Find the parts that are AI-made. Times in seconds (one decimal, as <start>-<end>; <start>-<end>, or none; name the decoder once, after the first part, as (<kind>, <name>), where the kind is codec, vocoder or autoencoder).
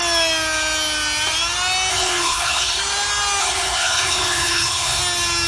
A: 1.9-2.8 (codec, HILCodec); 3.4-5.0